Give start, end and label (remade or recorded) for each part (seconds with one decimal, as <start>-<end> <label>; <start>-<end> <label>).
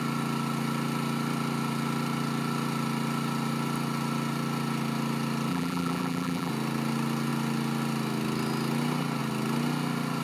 0.0-5.5 recorded; 5.5-6.5 remade; 6.5-10.2 recorded